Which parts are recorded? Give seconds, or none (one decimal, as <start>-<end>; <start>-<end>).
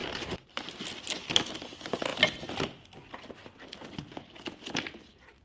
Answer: 0.5-5.4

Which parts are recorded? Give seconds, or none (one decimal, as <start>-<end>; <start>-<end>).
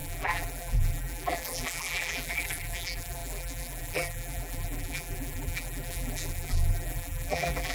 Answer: none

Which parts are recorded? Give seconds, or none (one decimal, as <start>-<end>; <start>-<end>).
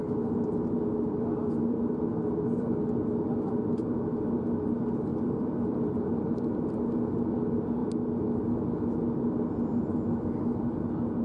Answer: 0.0-5.1; 6.3-11.2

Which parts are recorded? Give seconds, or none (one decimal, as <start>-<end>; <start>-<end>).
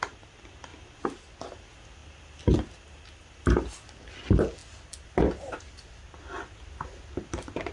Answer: 0.0-7.7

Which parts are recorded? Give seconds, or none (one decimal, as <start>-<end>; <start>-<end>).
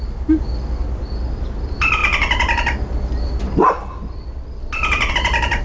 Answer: 2.0-5.1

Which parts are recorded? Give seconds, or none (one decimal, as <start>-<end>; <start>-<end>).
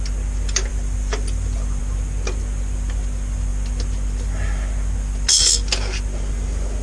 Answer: 0.0-0.7; 1.8-6.8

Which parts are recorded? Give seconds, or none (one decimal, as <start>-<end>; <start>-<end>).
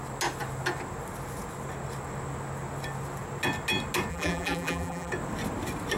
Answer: 0.0-4.1; 5.1-6.0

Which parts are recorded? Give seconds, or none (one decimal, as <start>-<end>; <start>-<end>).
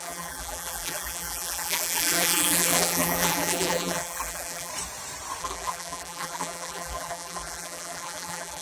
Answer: 4.7-5.4